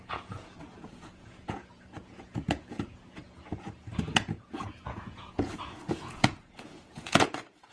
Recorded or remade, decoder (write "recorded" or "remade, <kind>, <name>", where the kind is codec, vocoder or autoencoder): remade, vocoder, Vocos